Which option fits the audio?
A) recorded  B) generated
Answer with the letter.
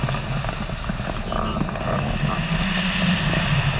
A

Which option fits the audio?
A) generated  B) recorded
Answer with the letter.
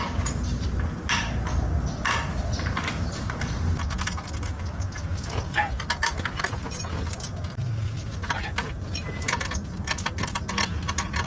B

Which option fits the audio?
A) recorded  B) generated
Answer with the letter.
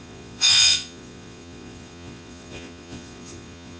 B